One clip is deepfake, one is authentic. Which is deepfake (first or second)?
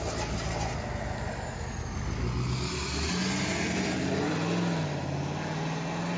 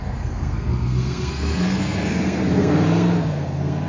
second